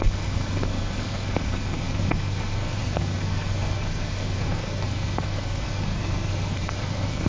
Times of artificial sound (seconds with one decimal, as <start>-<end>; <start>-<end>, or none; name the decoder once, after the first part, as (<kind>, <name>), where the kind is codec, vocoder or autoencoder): 0.0-7.3 (codec, SNAC)